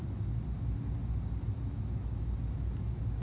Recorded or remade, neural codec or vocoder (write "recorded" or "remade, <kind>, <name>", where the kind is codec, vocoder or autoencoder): recorded